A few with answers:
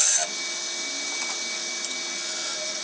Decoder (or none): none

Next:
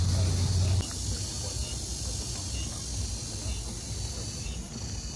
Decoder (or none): none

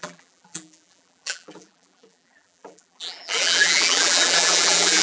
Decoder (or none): vocoder, BigVGAN v2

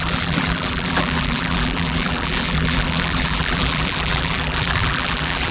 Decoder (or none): vocoder, BigVGAN v2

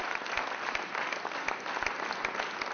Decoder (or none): none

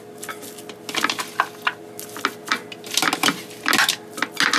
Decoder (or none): none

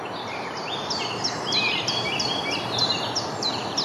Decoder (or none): vocoder, BigVGAN v2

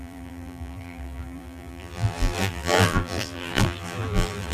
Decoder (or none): vocoder, BigVGAN v2